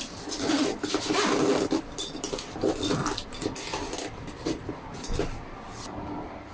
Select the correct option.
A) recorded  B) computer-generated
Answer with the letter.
A